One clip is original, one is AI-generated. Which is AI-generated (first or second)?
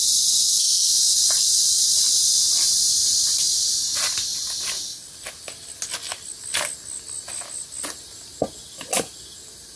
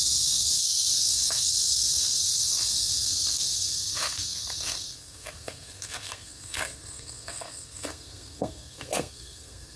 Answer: second